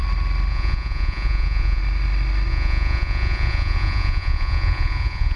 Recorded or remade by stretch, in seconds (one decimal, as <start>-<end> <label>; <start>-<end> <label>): 0.0-0.5 recorded; 0.5-1.8 remade; 1.8-2.5 recorded; 2.5-5.4 remade